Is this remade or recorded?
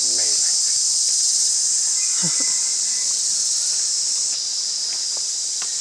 recorded